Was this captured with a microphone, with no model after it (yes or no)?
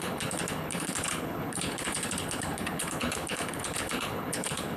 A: no